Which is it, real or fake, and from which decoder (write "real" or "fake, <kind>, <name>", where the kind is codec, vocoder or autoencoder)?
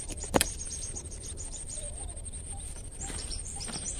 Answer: fake, vocoder, BigVGAN v2